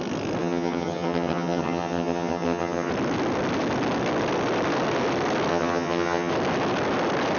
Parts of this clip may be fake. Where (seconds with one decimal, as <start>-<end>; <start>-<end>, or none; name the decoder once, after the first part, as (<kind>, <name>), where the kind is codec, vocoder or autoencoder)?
0.4-2.9 (vocoder, HiFi-GAN); 5.5-6.3